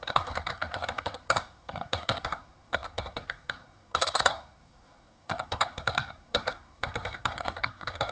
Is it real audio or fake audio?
fake